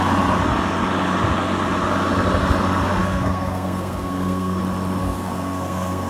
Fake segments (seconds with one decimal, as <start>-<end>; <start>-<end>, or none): 3.0-4.6; 5.0-6.1